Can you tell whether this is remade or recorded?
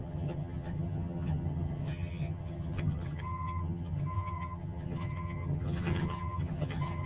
remade